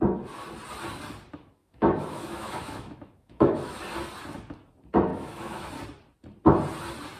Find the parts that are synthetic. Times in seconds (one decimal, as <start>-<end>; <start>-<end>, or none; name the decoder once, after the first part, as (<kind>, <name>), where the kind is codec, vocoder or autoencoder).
1.6-3.8 (autoencoder, DAC-VAE); 5.1-5.7